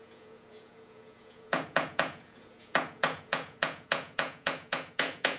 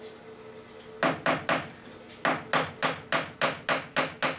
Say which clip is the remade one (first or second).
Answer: first